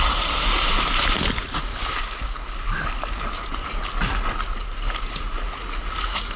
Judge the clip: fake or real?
real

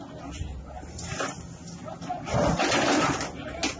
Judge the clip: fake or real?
real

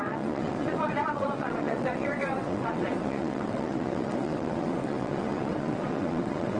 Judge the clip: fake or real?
fake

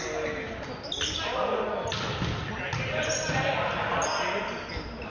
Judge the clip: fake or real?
real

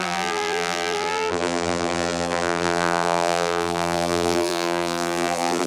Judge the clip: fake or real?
fake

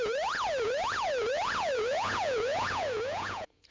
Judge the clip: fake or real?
fake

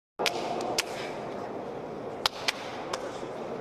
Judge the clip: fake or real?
real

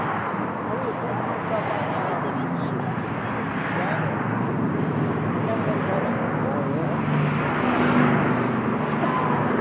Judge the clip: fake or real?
real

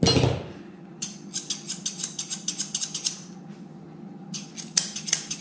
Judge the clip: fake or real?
real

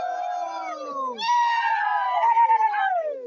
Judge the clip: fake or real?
real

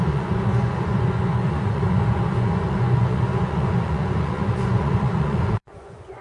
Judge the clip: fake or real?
fake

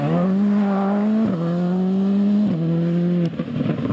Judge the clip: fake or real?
real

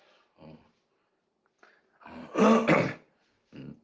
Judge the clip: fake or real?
real